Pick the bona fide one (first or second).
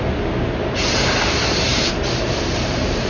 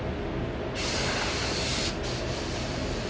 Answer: second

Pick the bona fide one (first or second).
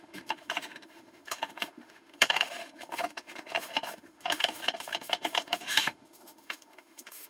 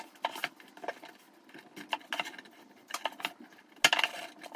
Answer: second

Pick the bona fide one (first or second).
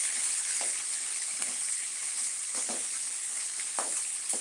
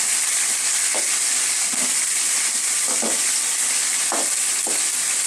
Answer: second